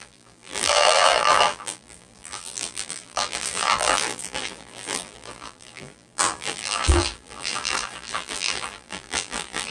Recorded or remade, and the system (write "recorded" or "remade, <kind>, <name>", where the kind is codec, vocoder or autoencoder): remade, vocoder, BigVGAN v2